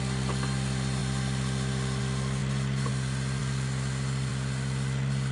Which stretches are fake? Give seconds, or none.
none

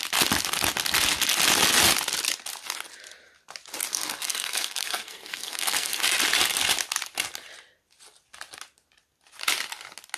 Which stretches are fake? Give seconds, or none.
3.9-6.0 (codec, SNAC)

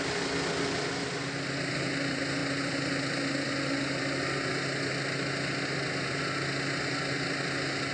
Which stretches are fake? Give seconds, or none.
none

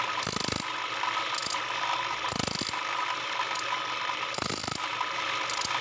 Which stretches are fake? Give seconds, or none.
none

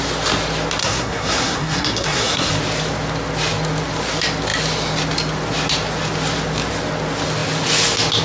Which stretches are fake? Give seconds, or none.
0.8-2.5 (codec, SNAC)

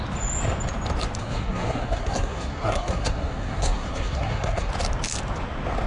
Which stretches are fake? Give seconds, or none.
1.2-4.7 (codec, SNAC)

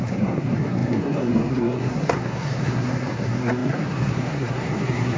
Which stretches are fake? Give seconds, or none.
0.0-5.2 (codec, SNAC)